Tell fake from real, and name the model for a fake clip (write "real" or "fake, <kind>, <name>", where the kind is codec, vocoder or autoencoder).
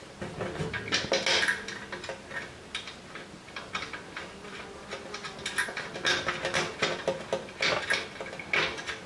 real